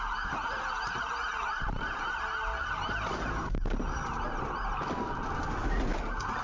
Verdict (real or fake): real